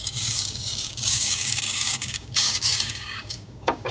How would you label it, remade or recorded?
remade